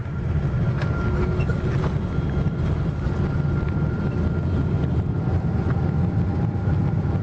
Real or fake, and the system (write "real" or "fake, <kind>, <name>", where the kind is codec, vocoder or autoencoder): real